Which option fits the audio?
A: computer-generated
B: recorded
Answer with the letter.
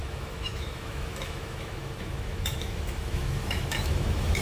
A